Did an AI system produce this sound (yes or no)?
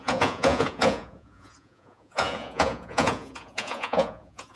yes